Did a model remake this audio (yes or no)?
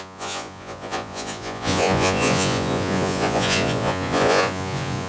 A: yes